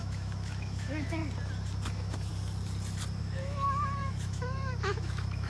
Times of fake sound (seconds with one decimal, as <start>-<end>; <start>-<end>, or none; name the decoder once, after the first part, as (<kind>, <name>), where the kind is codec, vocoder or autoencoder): 0.0-1.2 (autoencoder, DAC-VAE); 1.8-2.3; 3.2-5.5